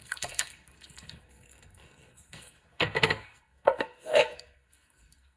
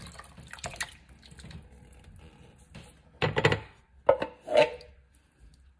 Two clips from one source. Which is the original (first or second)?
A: second